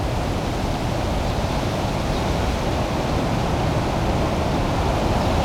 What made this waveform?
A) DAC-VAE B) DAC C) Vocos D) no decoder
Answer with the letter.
D